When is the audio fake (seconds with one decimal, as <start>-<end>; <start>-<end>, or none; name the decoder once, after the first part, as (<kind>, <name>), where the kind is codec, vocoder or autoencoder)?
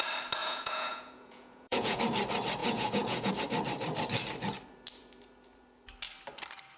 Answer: 0.4-2.0 (vocoder, Vocos); 2.6-3.3